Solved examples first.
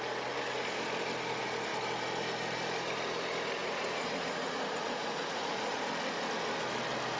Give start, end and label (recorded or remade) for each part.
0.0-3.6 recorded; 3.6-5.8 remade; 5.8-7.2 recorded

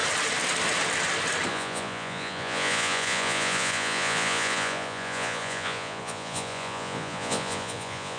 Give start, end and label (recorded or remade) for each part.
0.0-1.5 recorded; 1.5-8.2 remade

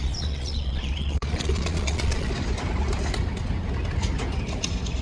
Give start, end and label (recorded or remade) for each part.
0.0-2.3 remade; 2.3-5.0 recorded

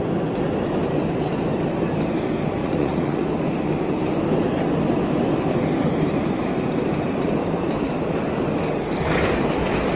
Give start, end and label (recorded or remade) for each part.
0.0-2.6 recorded; 2.6-3.2 remade; 3.2-10.0 recorded

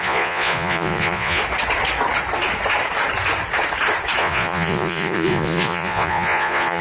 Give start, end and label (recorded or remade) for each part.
0.0-1.4 remade; 1.4-4.2 recorded; 4.2-6.8 remade

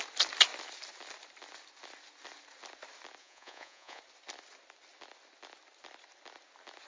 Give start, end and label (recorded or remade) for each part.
0.0-3.2 recorded; 3.2-4.0 remade; 4.0-6.9 recorded